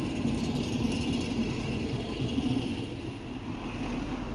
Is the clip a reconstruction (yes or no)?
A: no